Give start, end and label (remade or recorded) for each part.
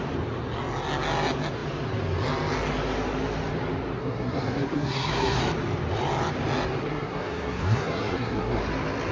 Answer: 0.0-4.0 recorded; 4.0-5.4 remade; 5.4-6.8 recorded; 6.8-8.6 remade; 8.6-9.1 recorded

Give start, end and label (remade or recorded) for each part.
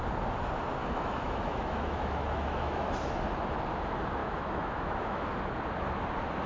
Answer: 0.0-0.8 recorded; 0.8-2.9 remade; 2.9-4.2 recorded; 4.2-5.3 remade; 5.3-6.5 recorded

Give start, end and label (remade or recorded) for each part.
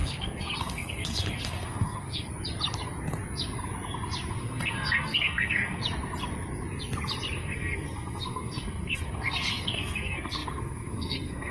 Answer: 0.0-2.3 remade; 2.3-4.3 recorded; 4.3-5.8 remade; 5.8-7.4 recorded; 7.4-11.5 remade